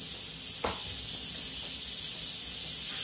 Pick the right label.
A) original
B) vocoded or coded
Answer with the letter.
A